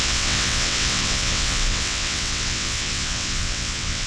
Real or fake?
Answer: fake